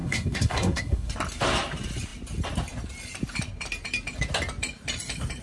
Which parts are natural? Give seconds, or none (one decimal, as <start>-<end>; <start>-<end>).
1.1-5.4